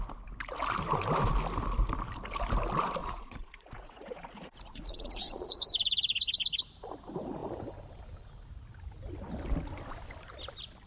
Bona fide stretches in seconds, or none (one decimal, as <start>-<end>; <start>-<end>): 0.0-3.0; 5.6-10.9